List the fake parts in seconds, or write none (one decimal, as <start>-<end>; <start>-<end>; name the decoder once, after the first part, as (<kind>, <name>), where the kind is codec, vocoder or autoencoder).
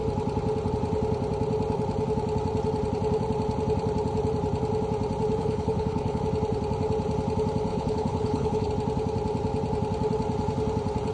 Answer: 5.4-6.2 (codec, HILCodec); 7.7-8.7